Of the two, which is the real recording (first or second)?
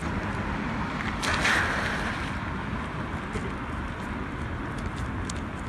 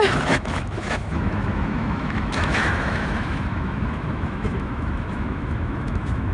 first